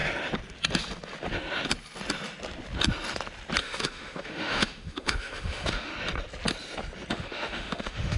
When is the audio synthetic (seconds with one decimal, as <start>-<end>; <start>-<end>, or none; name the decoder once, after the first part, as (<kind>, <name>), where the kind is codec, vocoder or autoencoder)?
3.6-5.9 (autoencoder, DAC-VAE); 7.1-8.2

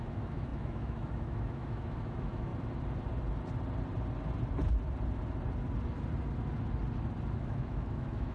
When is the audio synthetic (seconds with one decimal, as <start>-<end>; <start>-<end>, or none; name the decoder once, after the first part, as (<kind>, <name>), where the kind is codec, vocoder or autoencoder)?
0.0-2.5 (autoencoder, DAC-VAE); 7.3-8.3

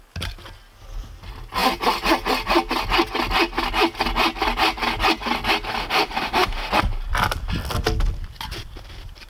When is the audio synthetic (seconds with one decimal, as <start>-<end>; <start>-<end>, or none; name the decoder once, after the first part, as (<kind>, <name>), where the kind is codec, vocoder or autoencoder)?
5.8-6.7 (autoencoder, DAC-VAE)